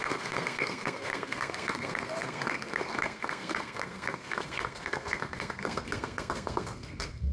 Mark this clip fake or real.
fake